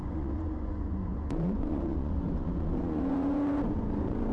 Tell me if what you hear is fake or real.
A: fake